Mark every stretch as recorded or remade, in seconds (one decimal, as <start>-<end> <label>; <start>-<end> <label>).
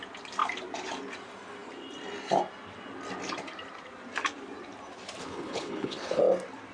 0.0-5.2 recorded; 5.2-6.2 remade; 6.2-6.7 recorded